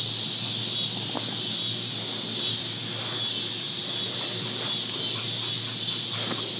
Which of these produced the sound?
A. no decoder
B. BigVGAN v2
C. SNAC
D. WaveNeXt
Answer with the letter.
A